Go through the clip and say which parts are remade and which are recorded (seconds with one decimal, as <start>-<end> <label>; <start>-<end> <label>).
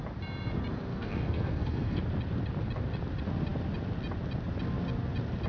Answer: 0.0-0.9 recorded; 0.9-2.0 remade; 2.0-5.5 recorded